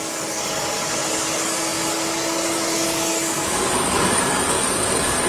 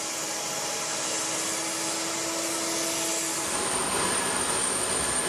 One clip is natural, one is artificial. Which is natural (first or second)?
second